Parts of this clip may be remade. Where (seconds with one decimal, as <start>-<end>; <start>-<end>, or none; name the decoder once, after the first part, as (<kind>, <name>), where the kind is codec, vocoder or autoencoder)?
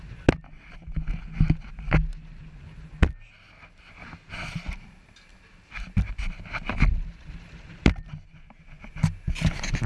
5.3-7.9 (vocoder, BigVGAN v2)